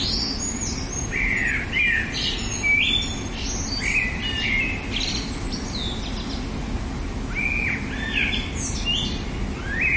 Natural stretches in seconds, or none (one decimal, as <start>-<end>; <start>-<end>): 0.0-10.0